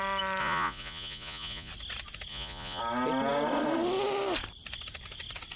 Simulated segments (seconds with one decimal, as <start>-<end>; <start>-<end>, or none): 0.4-1.7; 2.3-2.8